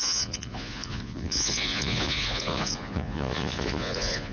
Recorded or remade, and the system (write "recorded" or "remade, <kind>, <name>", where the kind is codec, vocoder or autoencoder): remade, vocoder, Vocos